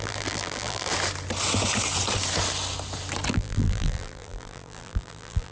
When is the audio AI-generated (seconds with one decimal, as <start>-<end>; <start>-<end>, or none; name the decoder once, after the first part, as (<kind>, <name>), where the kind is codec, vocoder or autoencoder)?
0.0-0.9 (vocoder, BigVGAN v2); 3.3-5.5